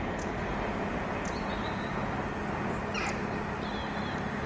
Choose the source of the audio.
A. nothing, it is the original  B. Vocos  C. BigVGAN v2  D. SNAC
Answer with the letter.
A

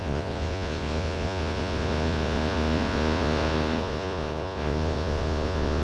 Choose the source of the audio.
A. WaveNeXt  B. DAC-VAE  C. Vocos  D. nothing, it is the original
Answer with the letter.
C